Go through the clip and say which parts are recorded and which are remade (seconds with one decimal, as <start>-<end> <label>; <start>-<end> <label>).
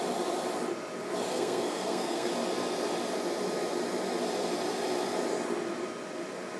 0.0-1.3 recorded; 1.3-2.3 remade; 2.3-6.6 recorded